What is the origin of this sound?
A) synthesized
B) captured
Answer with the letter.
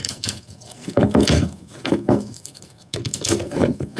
A